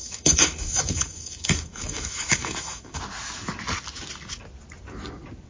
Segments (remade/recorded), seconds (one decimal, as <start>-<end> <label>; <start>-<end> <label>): 0.0-3.0 remade; 3.0-5.5 recorded